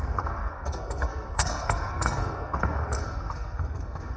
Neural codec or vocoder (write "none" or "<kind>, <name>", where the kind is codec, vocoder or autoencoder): codec, SNAC